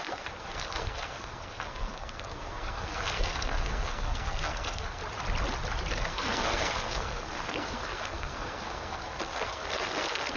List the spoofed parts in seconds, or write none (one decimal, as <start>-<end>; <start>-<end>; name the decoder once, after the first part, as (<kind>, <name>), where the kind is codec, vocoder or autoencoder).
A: 0.0-5.0 (codec, SNAC); 5.9-10.4